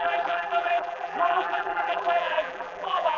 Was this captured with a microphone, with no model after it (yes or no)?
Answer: no